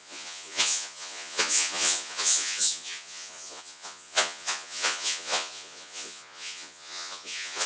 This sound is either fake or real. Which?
fake